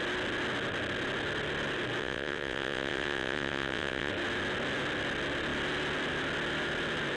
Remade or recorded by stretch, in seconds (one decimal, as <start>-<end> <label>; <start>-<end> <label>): 0.0-2.0 recorded; 2.0-4.1 remade; 4.1-7.2 recorded